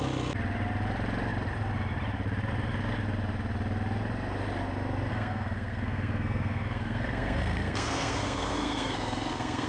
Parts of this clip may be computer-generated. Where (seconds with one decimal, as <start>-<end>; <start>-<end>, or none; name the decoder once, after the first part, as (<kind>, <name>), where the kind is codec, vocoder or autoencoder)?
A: 5.1-9.7 (codec, SNAC)